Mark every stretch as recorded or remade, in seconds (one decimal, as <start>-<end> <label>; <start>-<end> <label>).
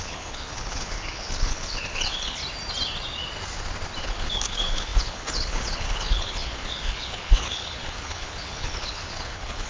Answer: 0.0-2.4 remade; 2.4-4.0 recorded; 4.0-9.7 remade